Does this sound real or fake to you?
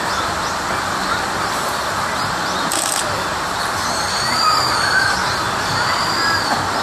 real